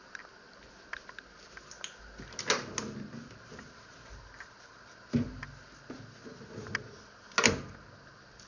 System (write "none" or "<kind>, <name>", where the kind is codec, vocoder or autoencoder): none